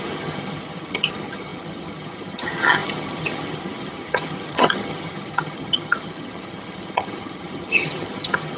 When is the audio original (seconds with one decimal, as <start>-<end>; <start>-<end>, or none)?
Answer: none